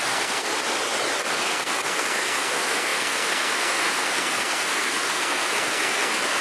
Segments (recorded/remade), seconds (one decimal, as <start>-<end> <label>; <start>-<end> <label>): 0.0-0.5 remade; 0.5-1.3 recorded; 1.3-6.4 remade